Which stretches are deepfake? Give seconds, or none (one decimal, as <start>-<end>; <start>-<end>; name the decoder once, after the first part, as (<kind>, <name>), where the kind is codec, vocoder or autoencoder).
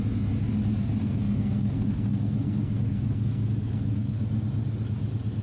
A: 1.0-4.2 (codec, SNAC)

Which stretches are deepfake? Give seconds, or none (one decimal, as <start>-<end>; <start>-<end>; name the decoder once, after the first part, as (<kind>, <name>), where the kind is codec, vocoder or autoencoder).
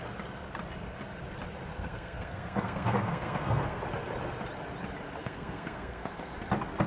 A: 1.7-3.8 (codec, SNAC); 5.2-6.3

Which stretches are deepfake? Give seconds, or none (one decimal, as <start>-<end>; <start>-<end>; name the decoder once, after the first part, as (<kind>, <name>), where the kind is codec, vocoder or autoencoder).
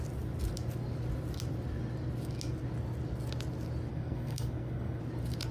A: 3.9-5.0 (codec, SNAC)